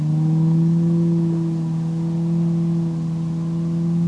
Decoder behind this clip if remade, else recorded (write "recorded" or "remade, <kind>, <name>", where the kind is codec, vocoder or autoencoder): recorded